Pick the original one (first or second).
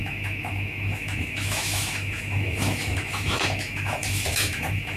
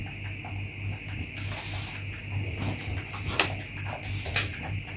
second